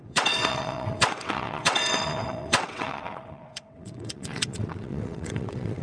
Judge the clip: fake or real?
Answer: fake